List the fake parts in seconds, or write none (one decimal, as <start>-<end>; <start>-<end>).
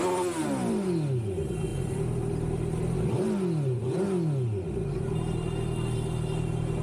none